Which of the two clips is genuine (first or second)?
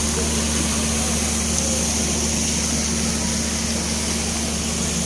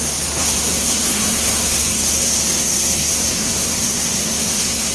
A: first